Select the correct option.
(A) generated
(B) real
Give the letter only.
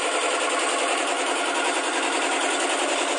B